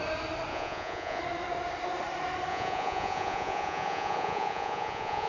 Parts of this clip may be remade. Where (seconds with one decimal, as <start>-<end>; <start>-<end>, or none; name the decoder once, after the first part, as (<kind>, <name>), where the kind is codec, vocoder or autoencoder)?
0.5-1.2 (vocoder, Vocos); 2.5-5.3